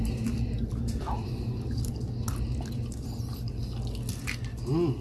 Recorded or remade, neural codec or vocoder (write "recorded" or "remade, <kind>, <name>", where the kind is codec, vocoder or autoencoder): recorded